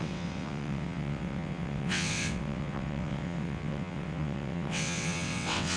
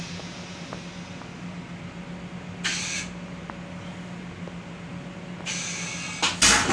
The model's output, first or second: first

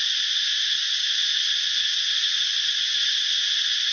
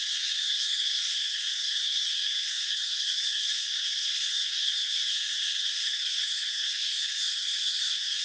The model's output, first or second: second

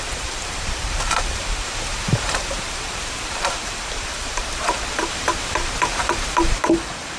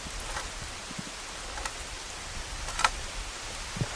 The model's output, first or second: first